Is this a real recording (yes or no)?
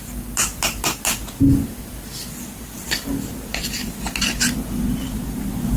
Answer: yes